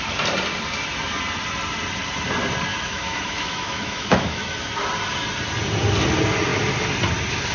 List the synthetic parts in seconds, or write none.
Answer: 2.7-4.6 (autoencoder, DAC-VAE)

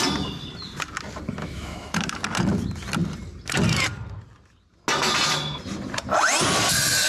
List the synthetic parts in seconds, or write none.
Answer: 1.4-2.0 (autoencoder, DAC-VAE)

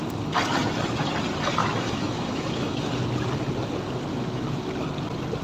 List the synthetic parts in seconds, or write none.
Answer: 1.6-2.9 (autoencoder, DAC-VAE); 4.1-4.7

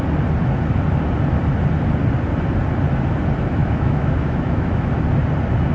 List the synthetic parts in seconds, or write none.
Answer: 3.6-4.9 (autoencoder, DAC-VAE)

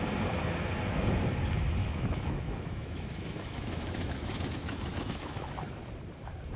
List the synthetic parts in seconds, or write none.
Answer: 1.8-5.8 (autoencoder, DAC-VAE)

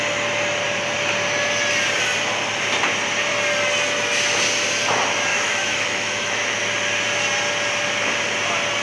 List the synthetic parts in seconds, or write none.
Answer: 5.3-6.5 (autoencoder, DAC-VAE)

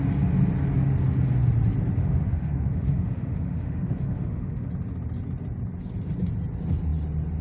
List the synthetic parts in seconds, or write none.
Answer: 2.0-4.7 (autoencoder, DAC-VAE)